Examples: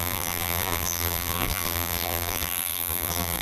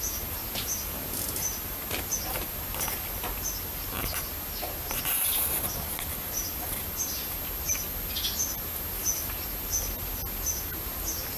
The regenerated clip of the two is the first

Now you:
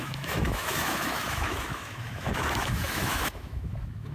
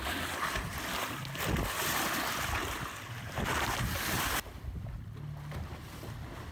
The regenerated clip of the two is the first